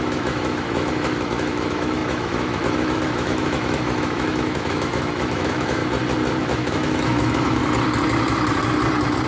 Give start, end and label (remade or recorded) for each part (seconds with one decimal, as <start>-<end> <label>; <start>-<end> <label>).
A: 0.0-5.8 remade; 5.8-6.4 recorded; 6.4-7.6 remade; 7.6-9.3 recorded